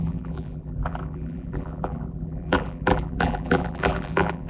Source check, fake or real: fake